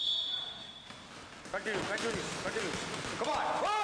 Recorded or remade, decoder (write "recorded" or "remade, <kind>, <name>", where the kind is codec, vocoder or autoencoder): recorded